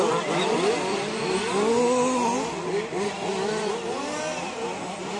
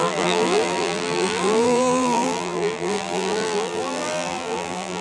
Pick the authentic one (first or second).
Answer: first